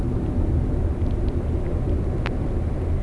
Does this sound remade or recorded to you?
recorded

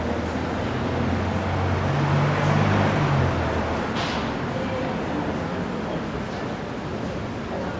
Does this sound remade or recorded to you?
recorded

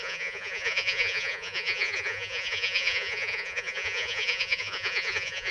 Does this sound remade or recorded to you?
remade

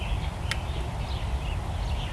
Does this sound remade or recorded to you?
recorded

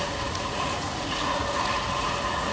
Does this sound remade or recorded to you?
remade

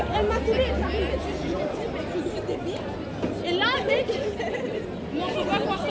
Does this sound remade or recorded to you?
recorded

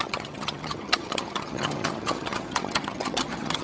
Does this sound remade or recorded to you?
remade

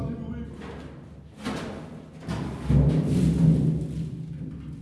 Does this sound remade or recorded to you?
recorded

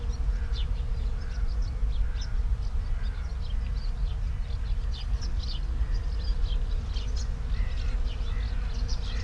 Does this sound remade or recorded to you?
recorded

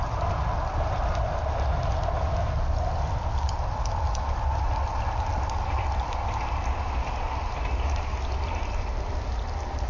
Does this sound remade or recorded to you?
recorded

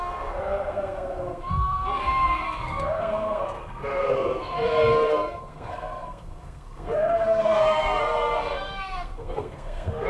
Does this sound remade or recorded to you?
remade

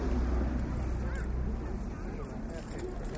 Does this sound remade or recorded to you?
recorded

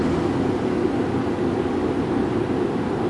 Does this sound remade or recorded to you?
recorded